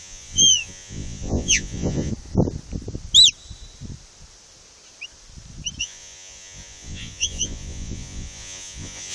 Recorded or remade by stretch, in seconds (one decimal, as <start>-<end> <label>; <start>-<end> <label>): 0.0-2.1 remade; 2.1-5.8 recorded; 5.8-9.1 remade